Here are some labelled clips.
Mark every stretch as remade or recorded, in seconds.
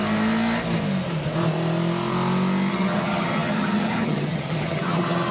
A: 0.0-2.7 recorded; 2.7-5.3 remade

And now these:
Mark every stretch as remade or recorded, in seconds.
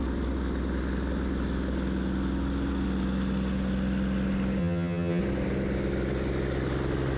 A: 0.0-4.6 recorded; 4.6-5.2 remade; 5.2-7.2 recorded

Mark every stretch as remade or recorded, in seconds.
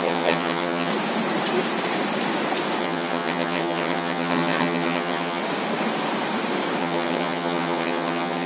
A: 0.0-0.9 remade; 0.9-2.8 recorded; 2.8-5.4 remade; 5.4-6.8 recorded; 6.8-8.5 remade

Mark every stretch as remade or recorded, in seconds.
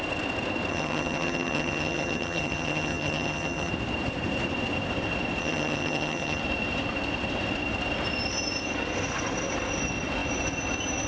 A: 0.0-0.7 recorded; 0.7-3.7 remade; 3.7-5.4 recorded; 5.4-6.4 remade; 6.4-11.1 recorded